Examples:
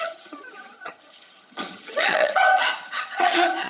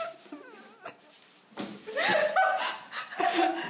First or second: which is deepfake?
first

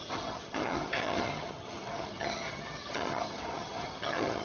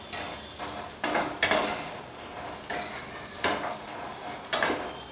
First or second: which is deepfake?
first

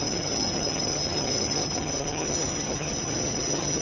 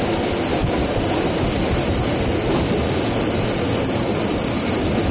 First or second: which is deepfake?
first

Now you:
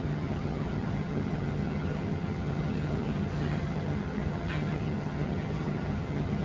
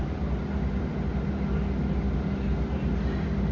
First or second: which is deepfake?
first